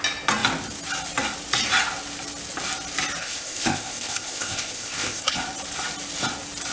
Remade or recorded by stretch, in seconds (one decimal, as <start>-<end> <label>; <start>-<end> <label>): 0.0-3.2 recorded; 3.2-5.4 remade; 5.4-6.7 recorded